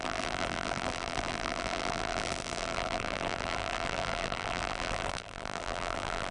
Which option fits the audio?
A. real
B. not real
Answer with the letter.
B